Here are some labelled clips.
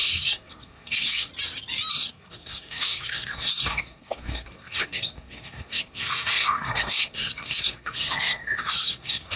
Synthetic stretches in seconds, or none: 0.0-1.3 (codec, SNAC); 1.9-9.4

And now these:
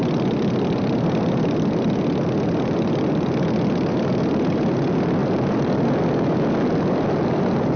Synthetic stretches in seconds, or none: none